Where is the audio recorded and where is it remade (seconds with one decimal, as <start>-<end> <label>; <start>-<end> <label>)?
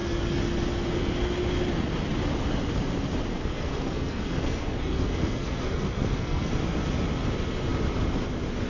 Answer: 0.0-3.3 recorded; 3.3-6.5 remade; 6.5-8.7 recorded